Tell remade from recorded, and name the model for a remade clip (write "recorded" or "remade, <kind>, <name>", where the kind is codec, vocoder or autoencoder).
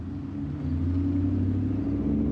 recorded